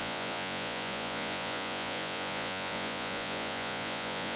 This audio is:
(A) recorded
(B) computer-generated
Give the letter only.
B